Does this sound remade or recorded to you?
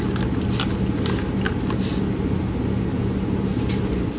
recorded